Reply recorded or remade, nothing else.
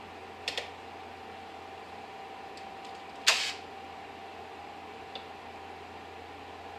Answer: recorded